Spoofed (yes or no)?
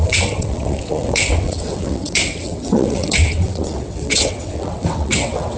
yes